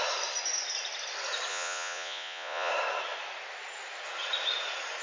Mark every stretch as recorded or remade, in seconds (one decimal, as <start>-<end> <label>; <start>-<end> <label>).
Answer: 0.0-1.5 recorded; 1.5-2.7 remade; 2.7-5.0 recorded